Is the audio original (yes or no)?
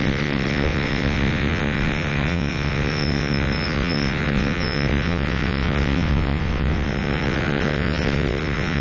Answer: no